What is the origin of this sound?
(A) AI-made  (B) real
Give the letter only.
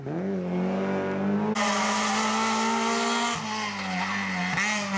B